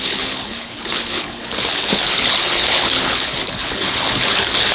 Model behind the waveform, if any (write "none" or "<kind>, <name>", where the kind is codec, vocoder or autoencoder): codec, HILCodec